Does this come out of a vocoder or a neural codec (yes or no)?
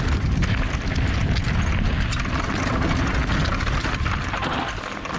no